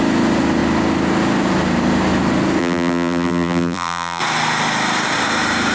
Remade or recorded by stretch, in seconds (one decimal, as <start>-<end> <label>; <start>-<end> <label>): 0.0-2.6 recorded; 2.6-4.2 remade; 4.2-5.7 recorded